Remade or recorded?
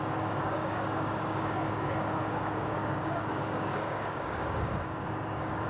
remade